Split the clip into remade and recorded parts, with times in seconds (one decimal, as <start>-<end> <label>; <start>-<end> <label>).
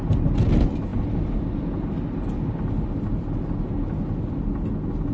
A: 0.0-5.1 recorded